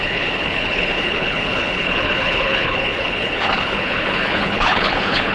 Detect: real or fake fake